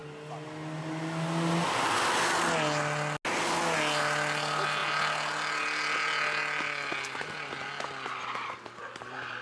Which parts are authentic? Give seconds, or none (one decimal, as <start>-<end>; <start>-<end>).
0.0-9.4